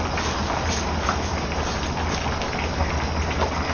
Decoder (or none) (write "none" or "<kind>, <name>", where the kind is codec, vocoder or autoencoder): none